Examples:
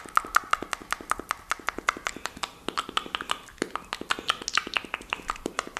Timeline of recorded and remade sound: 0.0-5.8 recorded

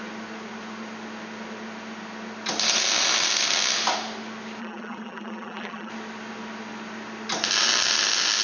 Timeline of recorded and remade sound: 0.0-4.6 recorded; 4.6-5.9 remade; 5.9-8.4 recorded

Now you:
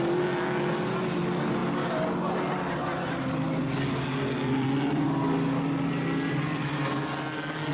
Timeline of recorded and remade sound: 0.0-7.7 recorded

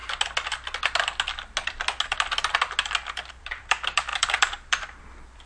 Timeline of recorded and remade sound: 0.0-3.3 recorded; 3.3-5.5 remade

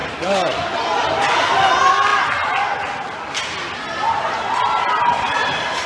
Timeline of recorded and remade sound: 0.0-0.7 remade; 0.7-5.9 recorded

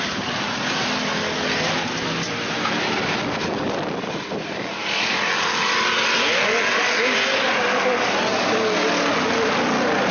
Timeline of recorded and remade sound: 0.0-4.8 recorded; 4.8-5.3 remade; 5.3-10.1 recorded